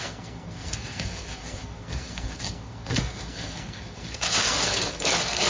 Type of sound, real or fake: fake